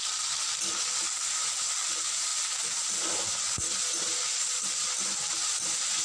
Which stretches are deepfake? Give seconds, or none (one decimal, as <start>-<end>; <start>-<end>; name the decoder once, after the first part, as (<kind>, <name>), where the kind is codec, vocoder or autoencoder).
none